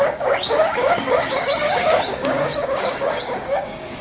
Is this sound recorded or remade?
remade